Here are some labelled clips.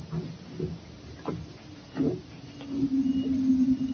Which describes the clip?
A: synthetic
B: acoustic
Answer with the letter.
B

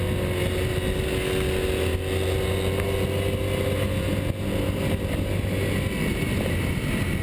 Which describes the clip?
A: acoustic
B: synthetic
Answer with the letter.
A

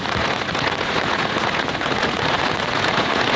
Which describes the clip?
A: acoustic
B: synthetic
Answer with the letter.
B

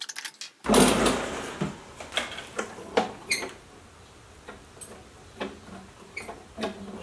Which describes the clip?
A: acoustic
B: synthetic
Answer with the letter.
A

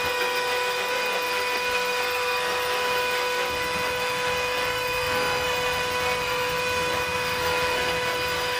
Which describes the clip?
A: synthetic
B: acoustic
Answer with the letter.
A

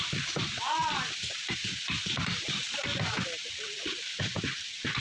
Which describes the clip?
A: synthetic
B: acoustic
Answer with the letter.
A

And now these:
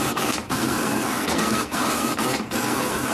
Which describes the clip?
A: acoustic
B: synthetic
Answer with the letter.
B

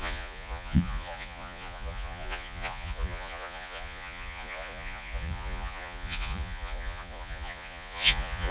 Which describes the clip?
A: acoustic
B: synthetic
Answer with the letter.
B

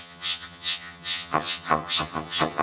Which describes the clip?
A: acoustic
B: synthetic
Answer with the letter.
B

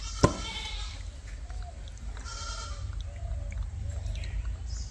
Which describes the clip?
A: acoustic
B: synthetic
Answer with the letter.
A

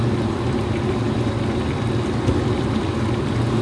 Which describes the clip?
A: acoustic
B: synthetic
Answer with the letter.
A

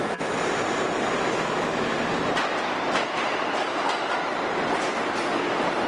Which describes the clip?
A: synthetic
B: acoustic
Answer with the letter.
B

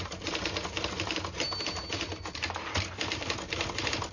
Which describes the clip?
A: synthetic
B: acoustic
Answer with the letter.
B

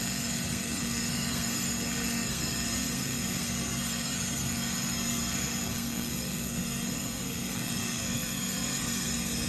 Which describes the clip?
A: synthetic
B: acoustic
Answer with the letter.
A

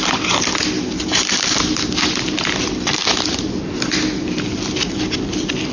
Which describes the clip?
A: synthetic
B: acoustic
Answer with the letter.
B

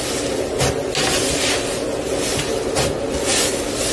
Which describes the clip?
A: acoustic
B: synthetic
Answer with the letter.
A